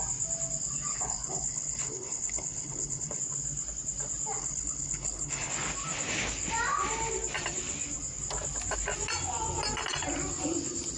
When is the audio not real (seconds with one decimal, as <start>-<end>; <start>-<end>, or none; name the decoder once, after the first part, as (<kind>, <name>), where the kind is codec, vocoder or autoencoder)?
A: 0.9-3.2 (codec, HILCodec); 4.4-5.5